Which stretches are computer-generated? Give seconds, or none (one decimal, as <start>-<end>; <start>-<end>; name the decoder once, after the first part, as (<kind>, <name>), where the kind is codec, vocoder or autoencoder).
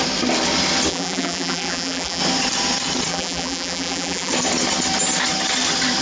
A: 0.9-2.2 (vocoder, BigVGAN v2); 3.1-4.3